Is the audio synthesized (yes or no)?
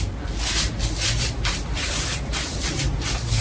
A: no